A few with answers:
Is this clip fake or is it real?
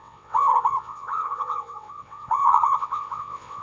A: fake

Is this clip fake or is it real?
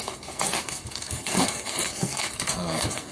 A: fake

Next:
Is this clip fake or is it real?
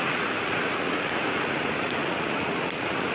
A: fake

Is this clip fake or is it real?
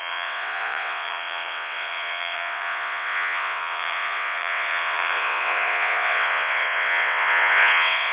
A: fake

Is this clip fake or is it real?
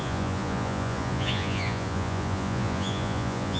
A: fake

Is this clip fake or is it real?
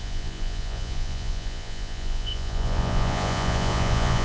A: fake